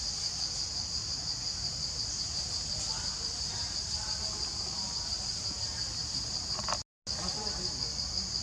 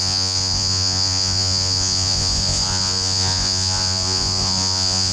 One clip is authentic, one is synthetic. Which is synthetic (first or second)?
second